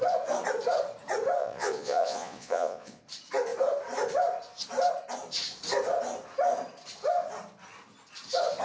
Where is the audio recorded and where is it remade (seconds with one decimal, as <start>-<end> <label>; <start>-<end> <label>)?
0.0-1.4 recorded; 1.4-3.0 remade; 3.0-8.6 recorded